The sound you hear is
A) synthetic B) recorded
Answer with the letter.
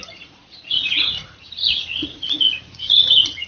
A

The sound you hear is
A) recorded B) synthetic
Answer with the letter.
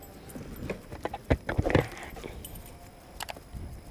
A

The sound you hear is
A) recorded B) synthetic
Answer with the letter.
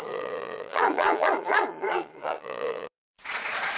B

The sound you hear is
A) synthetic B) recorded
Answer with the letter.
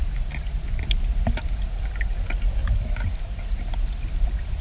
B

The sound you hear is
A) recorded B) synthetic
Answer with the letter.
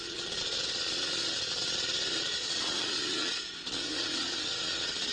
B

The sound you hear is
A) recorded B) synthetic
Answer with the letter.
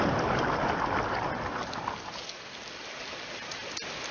A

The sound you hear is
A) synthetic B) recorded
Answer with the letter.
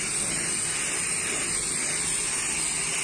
B